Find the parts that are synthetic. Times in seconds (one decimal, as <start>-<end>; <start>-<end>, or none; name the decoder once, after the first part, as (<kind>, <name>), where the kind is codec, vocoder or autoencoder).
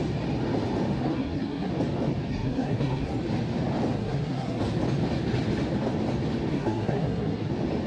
1.1-1.7 (codec, SNAC); 2.3-3.1; 3.9-4.6; 6.5-7.5